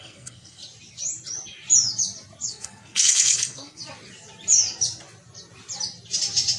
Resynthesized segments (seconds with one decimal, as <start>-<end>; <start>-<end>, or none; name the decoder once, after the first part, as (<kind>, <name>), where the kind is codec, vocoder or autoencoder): 0.0-0.6 (codec, SNAC); 2.5-3.8